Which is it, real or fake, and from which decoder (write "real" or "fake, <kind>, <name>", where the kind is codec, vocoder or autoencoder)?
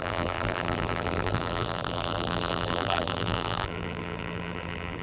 fake, vocoder, BigVGAN v2